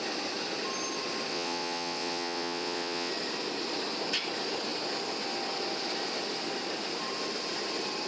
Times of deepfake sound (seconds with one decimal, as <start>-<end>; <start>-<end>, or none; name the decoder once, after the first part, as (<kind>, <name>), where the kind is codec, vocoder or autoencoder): 1.3-3.1 (vocoder, WaveNeXt)